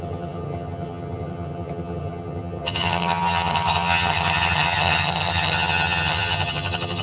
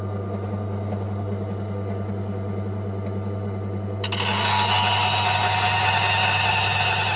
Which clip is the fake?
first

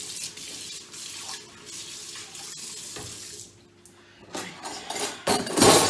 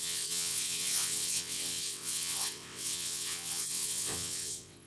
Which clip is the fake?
second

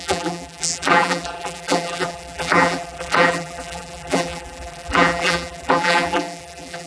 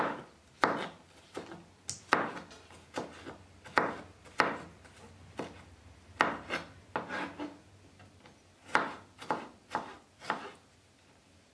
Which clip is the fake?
first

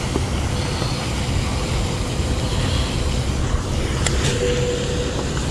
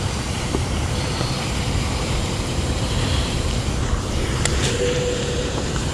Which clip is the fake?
second